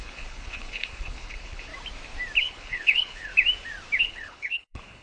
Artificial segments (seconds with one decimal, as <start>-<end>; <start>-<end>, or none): 0.0-1.7; 2.4-3.3; 4.0-5.0